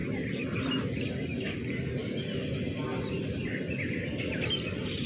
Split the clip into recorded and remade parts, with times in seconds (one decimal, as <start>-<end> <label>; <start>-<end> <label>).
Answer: 0.0-5.1 recorded